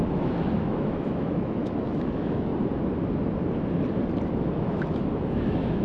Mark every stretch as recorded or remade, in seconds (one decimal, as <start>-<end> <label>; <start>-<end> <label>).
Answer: 0.0-2.5 remade; 2.5-4.7 recorded; 4.7-5.8 remade